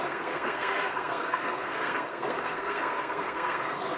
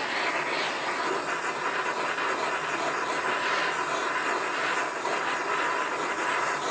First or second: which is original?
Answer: second